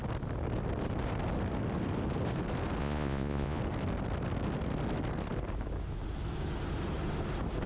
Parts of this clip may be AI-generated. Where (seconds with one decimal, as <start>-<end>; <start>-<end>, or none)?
2.8-3.6